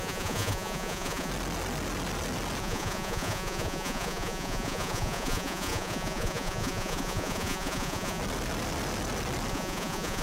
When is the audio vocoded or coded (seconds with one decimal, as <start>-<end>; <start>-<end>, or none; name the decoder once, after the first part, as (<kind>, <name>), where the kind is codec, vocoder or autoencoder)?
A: 0.0-1.3 (vocoder, Vocos); 2.6-8.2; 9.5-10.2